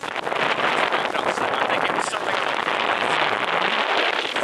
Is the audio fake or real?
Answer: real